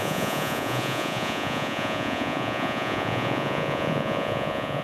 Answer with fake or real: fake